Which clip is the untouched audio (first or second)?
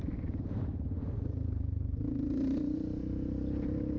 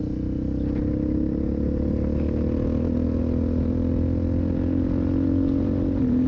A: second